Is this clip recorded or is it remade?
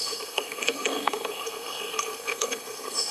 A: remade